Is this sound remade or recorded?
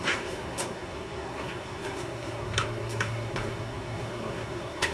remade